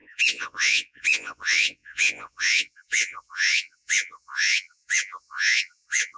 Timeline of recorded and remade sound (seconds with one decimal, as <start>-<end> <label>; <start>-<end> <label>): 0.0-6.2 remade